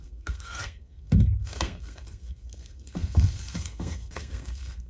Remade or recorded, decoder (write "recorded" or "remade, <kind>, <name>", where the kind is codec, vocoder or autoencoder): remade, codec, SNAC